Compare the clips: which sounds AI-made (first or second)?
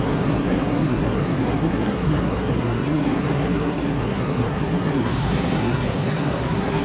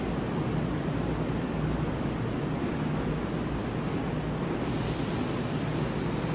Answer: first